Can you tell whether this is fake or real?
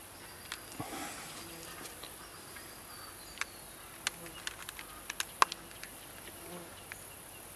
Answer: real